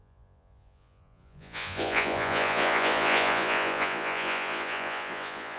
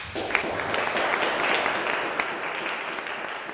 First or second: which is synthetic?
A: first